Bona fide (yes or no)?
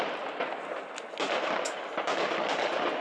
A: yes